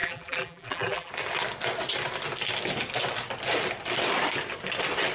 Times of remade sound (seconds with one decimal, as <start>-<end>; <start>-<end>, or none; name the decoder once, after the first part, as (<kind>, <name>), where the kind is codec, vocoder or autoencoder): 0.0-1.1 (vocoder, BigVGAN v2)